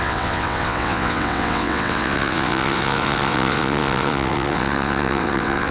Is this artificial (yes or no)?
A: yes